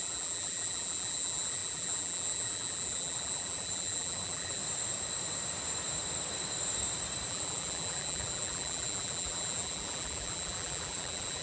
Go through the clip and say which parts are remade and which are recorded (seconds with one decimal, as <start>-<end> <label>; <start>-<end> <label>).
0.0-4.6 remade; 4.6-7.3 recorded; 7.3-11.4 remade